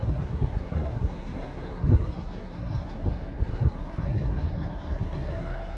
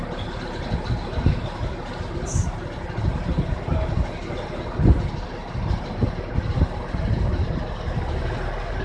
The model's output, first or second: first